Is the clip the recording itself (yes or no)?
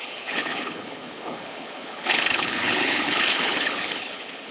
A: no